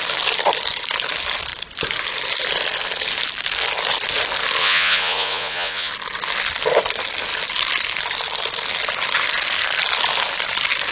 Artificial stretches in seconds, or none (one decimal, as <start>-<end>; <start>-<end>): 4.6-5.9